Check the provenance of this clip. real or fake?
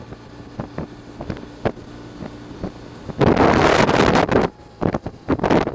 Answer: real